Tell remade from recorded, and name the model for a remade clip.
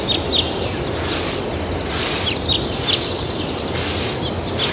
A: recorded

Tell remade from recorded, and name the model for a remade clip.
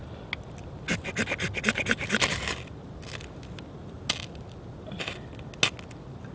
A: recorded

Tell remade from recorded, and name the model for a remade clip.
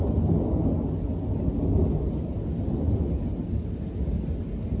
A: recorded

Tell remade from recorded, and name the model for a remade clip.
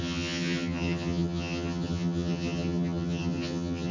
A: remade, vocoder, HiFi-GAN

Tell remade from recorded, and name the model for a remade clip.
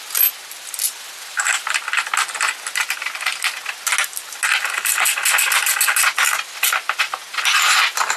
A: recorded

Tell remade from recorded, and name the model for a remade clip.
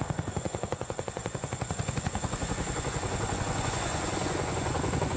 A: remade, vocoder, Vocos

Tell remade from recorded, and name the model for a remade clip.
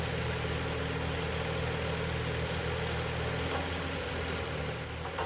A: recorded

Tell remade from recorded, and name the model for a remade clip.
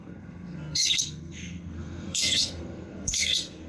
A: remade, codec, SNAC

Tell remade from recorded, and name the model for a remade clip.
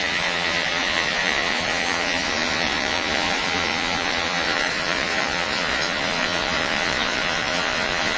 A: remade, vocoder, Vocos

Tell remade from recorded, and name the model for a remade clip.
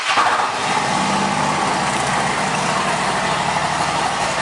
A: recorded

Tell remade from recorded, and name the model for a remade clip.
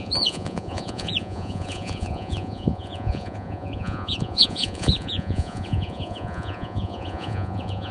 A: remade, vocoder, Vocos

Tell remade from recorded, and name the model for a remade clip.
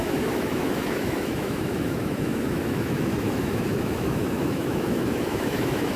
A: remade, autoencoder, DAC-VAE